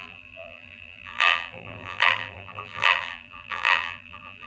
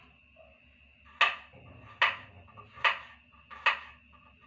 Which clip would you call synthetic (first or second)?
first